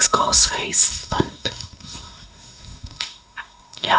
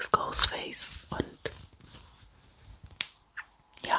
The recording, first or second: second